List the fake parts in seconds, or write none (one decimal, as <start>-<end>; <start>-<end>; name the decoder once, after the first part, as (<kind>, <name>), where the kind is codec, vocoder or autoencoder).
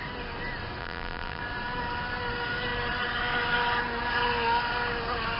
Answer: 0.8-1.4 (vocoder, BigVGAN v2)